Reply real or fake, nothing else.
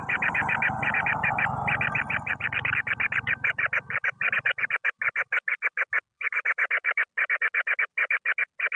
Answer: real